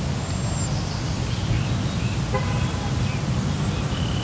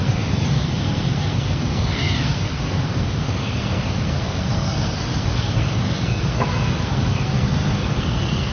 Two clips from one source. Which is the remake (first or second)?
second